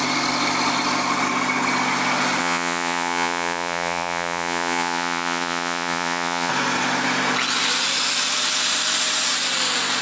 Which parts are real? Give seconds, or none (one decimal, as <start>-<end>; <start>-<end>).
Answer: 0.0-2.4; 6.5-10.0